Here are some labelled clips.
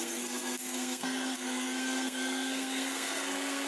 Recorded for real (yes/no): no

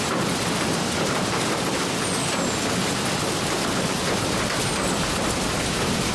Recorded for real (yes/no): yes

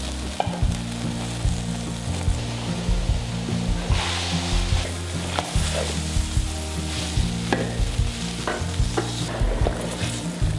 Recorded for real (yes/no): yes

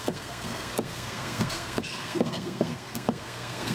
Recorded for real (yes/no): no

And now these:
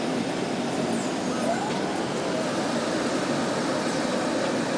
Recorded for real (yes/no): yes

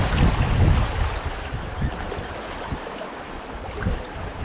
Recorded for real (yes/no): yes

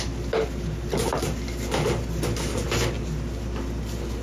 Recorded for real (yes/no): yes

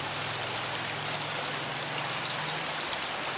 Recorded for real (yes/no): yes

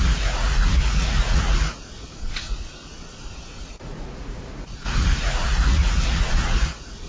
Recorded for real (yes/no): no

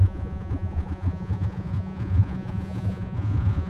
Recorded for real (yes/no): no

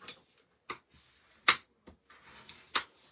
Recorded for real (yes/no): yes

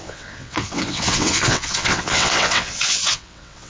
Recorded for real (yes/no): no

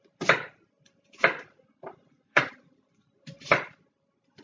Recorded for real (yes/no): no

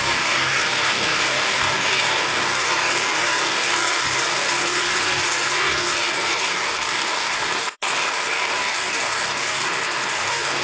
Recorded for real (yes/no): no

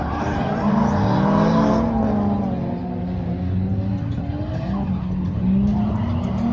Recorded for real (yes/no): yes